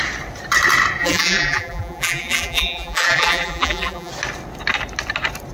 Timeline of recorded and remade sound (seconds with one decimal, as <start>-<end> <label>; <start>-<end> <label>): 0.0-1.0 recorded; 1.0-4.1 remade; 4.1-5.5 recorded